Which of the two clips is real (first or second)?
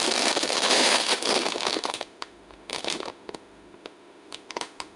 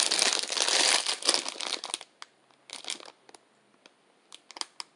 second